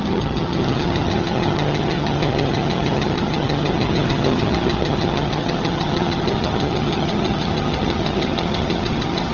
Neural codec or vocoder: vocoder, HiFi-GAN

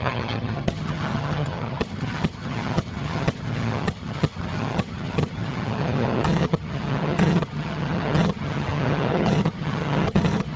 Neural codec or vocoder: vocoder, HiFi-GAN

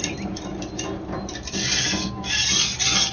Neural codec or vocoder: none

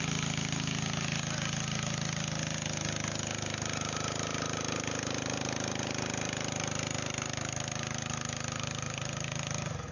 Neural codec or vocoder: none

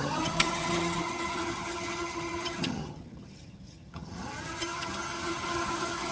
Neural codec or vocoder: vocoder, HiFi-GAN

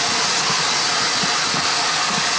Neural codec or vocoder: none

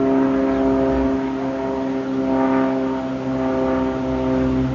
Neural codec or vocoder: none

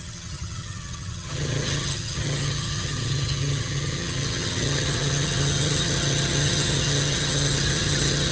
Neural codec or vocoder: vocoder, HiFi-GAN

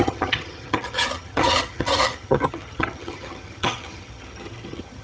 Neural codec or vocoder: vocoder, HiFi-GAN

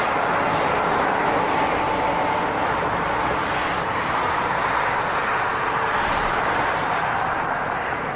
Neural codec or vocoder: none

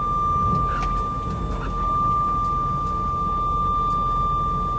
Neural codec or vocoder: none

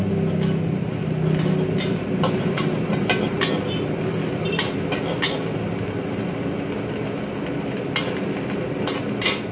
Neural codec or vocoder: none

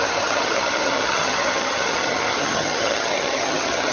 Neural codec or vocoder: vocoder, HiFi-GAN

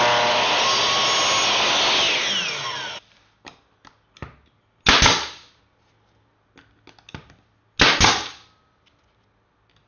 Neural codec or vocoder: none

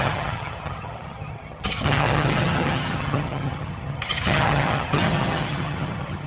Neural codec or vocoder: vocoder, HiFi-GAN